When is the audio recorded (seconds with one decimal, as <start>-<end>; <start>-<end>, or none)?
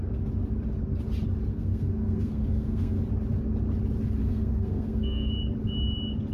0.0-1.5; 3.0-4.2; 5.3-6.3